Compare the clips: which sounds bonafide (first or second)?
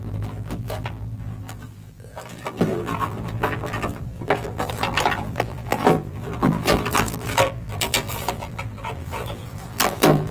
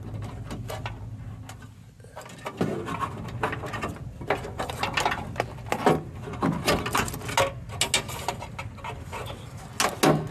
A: second